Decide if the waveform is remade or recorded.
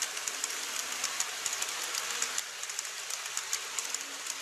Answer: remade